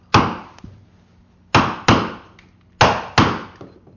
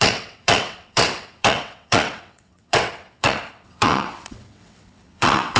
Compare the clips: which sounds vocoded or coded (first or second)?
second